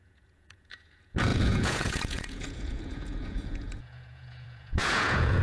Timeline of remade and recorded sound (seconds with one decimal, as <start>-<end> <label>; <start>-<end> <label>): 0.0-5.4 remade